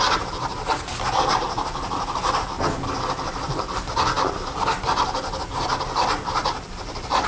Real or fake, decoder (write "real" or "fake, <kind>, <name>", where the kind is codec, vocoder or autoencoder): real